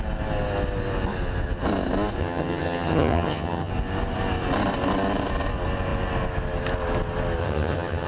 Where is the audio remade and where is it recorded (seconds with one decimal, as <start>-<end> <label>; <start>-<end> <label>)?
0.0-2.2 recorded; 2.2-3.7 remade; 3.7-7.4 recorded; 7.4-8.1 remade